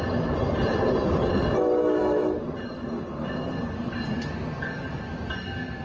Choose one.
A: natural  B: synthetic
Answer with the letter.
A